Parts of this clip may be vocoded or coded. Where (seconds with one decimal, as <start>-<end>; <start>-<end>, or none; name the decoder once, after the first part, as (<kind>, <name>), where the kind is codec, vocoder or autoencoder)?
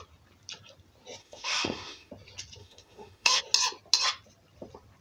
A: 1.2-2.1 (autoencoder, DAC-VAE); 2.6-3.4